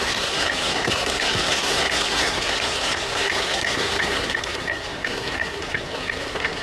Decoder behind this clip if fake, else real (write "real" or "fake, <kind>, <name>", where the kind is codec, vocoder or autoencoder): fake, codec, SNAC